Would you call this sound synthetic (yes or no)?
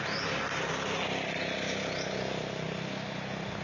no